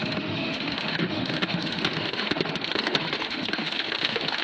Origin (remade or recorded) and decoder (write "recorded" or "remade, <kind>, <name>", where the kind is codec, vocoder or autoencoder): remade, autoencoder, DAC-VAE